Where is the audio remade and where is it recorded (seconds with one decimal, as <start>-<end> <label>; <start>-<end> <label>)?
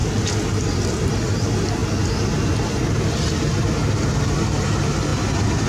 0.0-1.0 recorded; 1.0-1.8 remade; 1.8-3.1 recorded; 3.1-5.1 remade; 5.1-5.7 recorded